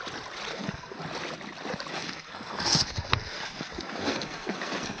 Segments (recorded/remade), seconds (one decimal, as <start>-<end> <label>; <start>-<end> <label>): 0.0-0.5 recorded; 0.5-1.0 remade; 1.0-1.9 recorded; 1.9-5.0 remade